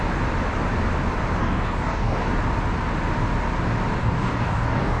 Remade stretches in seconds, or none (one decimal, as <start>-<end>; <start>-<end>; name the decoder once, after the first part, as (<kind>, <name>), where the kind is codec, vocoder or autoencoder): 1.4-2.3 (codec, DAC); 4.0-5.0